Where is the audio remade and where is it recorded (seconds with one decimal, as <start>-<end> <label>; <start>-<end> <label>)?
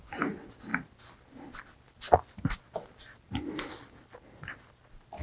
0.0-5.2 recorded